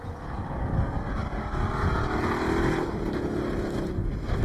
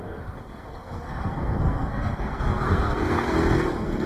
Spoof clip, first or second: second